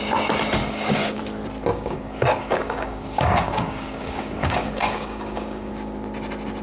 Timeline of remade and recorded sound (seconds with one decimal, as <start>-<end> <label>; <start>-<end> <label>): 0.0-0.6 recorded; 0.6-1.2 remade; 1.2-1.7 recorded; 1.7-5.7 remade; 5.7-6.6 recorded